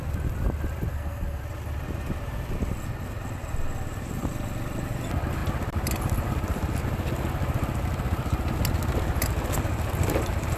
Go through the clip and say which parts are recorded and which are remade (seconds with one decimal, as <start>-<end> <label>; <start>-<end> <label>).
0.0-0.9 recorded; 0.9-1.4 remade; 1.4-10.6 recorded